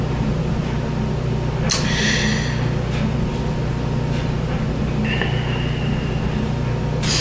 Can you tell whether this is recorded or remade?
recorded